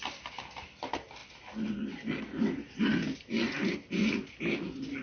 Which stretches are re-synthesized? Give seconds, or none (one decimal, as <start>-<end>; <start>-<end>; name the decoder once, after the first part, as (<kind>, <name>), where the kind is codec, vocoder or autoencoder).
3.6-4.4 (vocoder, BigVGAN v2)